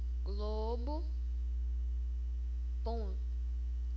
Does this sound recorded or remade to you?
recorded